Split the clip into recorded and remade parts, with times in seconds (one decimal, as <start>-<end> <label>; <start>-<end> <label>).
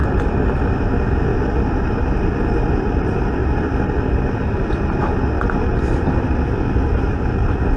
0.0-0.9 recorded; 0.9-1.3 remade; 1.3-2.9 recorded; 2.9-3.4 remade; 3.4-5.8 recorded; 5.8-7.8 remade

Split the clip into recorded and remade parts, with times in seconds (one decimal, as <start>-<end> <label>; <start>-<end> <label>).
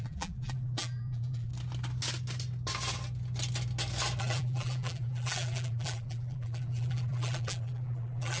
0.0-1.5 remade; 1.5-4.2 recorded; 4.2-8.4 remade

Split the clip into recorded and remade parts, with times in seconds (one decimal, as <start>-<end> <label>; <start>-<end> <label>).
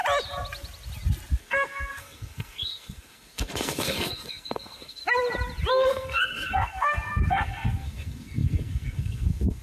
0.0-1.4 recorded; 1.4-5.0 remade; 5.0-5.7 recorded; 5.7-9.6 remade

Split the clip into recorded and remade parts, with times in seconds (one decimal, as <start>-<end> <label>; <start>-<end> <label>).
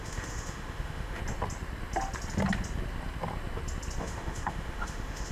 0.0-1.2 remade; 1.2-4.0 recorded; 4.0-5.3 remade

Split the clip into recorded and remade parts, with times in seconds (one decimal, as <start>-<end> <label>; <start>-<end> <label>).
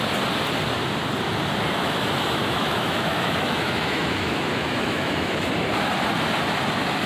0.0-1.8 recorded; 1.8-5.5 remade; 5.5-7.1 recorded